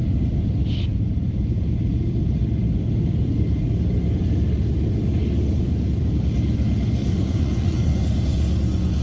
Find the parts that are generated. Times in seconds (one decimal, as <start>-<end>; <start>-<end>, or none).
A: 7.0-7.9